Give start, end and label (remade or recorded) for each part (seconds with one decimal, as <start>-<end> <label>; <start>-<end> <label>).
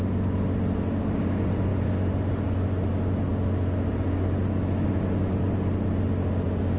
0.0-6.8 recorded